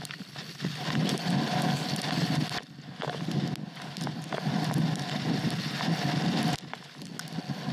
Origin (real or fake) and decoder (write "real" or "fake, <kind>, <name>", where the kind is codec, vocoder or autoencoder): real